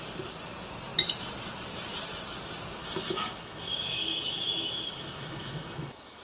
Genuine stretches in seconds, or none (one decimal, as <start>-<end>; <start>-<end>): 0.0-2.8